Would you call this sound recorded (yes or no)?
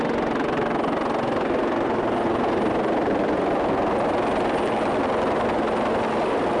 yes